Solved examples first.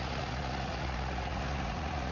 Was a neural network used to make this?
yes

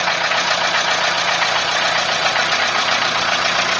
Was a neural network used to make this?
yes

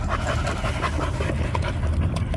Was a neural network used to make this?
no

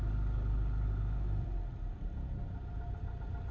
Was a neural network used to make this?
no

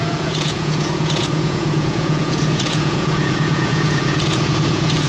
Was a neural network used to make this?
yes